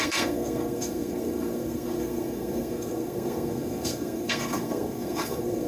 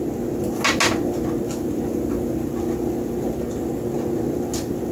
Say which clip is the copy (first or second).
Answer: first